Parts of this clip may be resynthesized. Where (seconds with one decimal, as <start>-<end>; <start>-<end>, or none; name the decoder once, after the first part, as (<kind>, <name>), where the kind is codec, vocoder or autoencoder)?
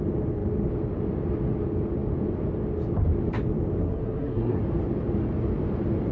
3.8-4.6 (codec, SNAC)